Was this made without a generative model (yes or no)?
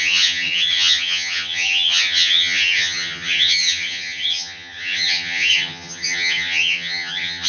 no